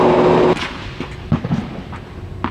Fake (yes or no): no